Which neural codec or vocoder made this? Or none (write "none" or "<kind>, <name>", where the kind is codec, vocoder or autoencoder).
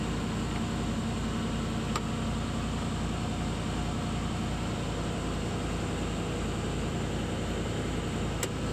none